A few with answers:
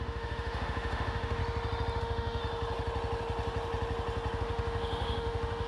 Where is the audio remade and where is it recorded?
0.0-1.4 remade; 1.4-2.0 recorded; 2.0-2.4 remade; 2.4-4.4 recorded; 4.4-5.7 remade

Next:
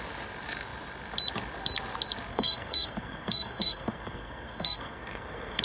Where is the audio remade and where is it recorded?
0.0-2.3 recorded; 2.3-5.6 remade

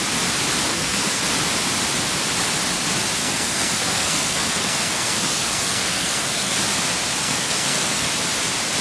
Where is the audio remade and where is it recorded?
0.0-0.7 recorded; 0.7-1.2 remade; 1.2-3.2 recorded; 3.2-6.6 remade; 6.6-7.2 recorded; 7.2-8.1 remade; 8.1-8.8 recorded

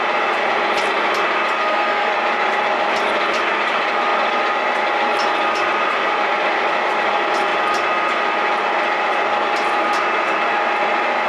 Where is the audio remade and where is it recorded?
0.0-1.6 recorded; 1.6-2.1 remade; 2.1-11.3 recorded

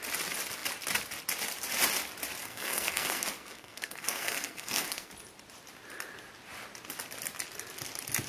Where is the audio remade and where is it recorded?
0.0-2.4 recorded; 2.4-5.1 remade; 5.1-8.3 recorded